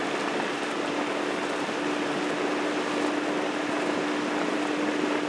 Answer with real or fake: real